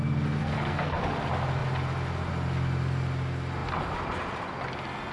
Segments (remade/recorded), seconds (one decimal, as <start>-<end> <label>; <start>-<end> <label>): 0.0-0.4 recorded; 0.4-1.0 remade; 1.0-5.1 recorded